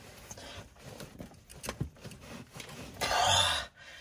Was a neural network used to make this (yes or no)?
no